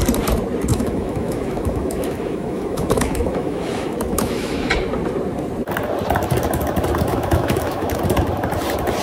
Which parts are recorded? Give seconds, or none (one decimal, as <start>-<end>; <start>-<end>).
0.0-0.7; 4.7-7.1; 8.0-9.0